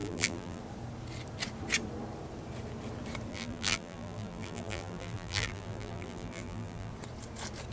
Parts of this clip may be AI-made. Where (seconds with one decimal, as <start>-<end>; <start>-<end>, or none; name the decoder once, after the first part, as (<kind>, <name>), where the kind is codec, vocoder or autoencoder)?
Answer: 0.0-0.6 (vocoder, BigVGAN v2); 3.3-6.9

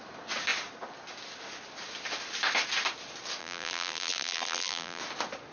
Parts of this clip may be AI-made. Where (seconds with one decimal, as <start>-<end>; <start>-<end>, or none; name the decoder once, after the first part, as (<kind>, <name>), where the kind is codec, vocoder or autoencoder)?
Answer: 3.4-5.0 (vocoder, BigVGAN v2)

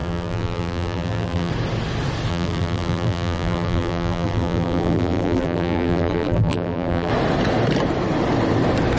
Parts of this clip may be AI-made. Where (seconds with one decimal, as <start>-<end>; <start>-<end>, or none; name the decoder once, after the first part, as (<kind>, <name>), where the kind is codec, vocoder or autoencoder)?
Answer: 0.0-1.5 (vocoder, BigVGAN v2); 2.3-7.1

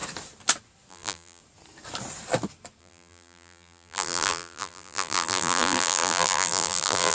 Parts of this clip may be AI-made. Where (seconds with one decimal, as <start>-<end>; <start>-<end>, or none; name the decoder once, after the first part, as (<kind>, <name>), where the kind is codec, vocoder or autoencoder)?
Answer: 0.9-1.4 (vocoder, BigVGAN v2); 2.8-7.1